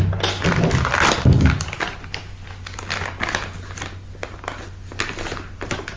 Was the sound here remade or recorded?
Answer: recorded